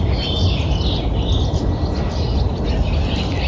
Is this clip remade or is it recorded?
recorded